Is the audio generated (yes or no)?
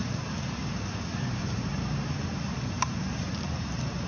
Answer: yes